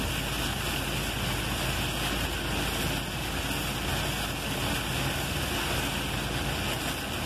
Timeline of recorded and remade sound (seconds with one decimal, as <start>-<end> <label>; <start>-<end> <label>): 0.0-7.3 recorded